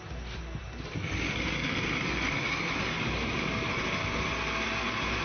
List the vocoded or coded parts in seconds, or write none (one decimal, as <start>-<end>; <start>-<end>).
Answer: none